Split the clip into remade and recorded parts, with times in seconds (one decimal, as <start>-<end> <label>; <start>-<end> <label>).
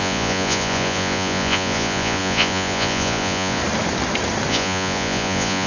0.0-3.6 remade; 3.6-4.5 recorded; 4.5-5.7 remade